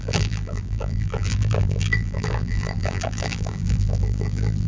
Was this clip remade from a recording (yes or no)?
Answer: yes